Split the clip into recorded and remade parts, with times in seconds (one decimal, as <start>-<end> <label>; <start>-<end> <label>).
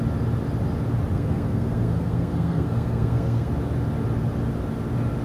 0.0-1.1 recorded; 1.1-3.5 remade; 3.5-5.2 recorded